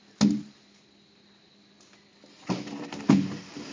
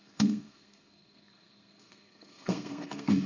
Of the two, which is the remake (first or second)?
second